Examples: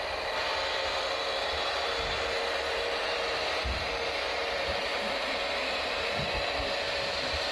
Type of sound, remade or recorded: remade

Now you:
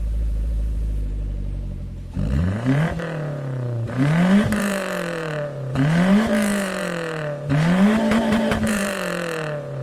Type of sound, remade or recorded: remade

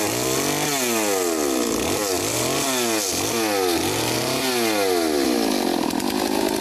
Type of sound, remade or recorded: recorded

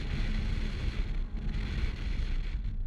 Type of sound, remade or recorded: recorded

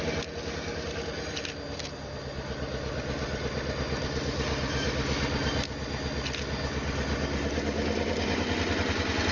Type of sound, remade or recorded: recorded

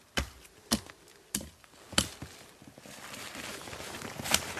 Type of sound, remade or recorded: recorded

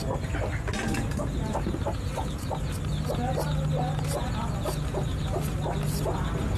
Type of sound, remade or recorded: recorded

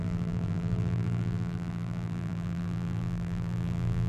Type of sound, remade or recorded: remade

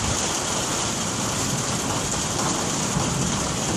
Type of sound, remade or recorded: recorded